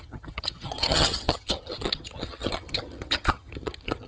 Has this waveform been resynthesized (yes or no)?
yes